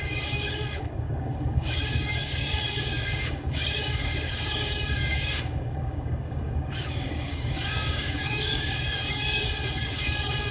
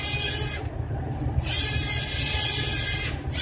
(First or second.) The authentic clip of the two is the second